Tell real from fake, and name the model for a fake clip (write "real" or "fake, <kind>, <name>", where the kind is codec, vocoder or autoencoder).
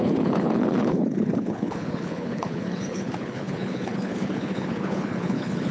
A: fake, codec, HILCodec